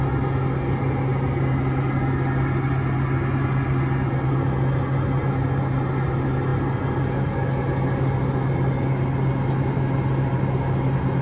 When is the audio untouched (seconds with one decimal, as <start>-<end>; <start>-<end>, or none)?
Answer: 0.0-11.2